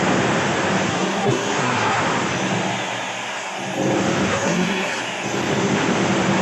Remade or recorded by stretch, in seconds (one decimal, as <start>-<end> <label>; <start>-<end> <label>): 0.0-0.9 recorded; 0.9-2.0 remade; 2.0-4.3 recorded; 4.3-5.0 remade; 5.0-6.4 recorded